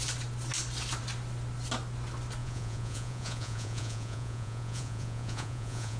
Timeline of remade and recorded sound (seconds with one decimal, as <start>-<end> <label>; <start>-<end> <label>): 0.0-2.4 recorded; 2.4-6.0 remade